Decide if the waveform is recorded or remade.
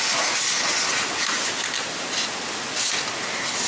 recorded